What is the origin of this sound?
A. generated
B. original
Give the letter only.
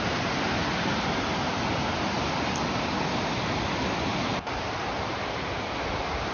B